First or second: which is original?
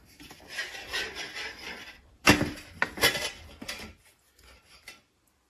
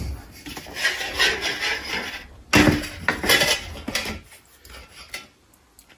second